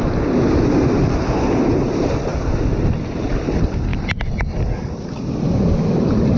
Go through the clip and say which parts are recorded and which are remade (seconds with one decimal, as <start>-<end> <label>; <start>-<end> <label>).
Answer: 0.0-6.4 recorded